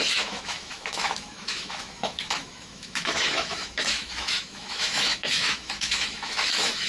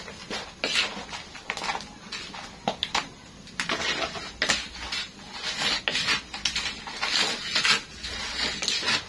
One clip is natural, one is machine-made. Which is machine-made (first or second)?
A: first